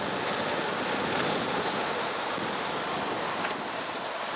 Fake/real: real